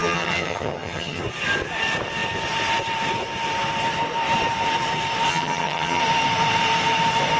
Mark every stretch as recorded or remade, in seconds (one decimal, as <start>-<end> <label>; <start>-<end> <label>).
0.0-1.2 remade; 1.2-5.3 recorded; 5.3-6.0 remade; 6.0-7.4 recorded